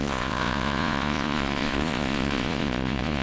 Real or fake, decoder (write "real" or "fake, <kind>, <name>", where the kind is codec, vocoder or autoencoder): fake, vocoder, Vocos